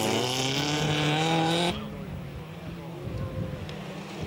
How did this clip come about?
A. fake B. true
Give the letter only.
B